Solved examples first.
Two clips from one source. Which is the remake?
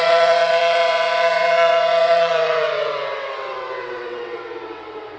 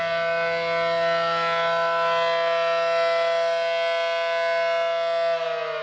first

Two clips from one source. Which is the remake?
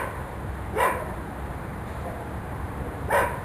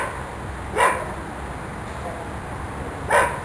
first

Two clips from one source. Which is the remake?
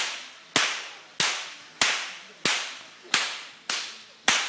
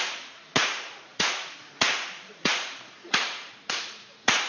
second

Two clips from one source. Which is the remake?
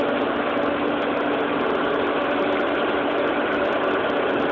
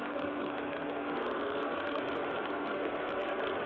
second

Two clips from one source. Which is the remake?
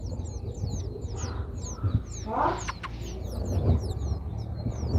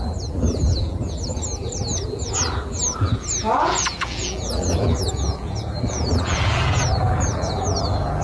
second